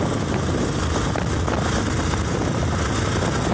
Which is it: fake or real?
real